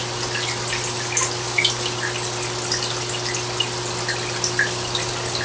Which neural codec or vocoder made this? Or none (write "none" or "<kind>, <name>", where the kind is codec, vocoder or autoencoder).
none